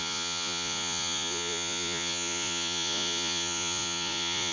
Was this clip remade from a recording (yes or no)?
yes